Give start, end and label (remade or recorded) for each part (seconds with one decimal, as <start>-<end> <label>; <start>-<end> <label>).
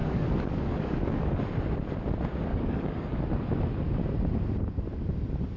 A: 0.0-1.4 remade; 1.4-2.5 recorded; 2.5-3.2 remade; 3.2-5.6 recorded